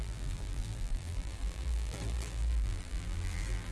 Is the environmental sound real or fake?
fake